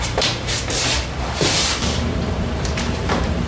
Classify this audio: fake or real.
fake